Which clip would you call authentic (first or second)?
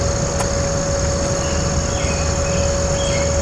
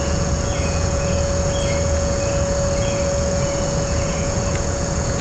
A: first